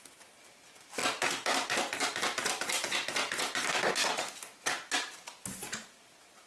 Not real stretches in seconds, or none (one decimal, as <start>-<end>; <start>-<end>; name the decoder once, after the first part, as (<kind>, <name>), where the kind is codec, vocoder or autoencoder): none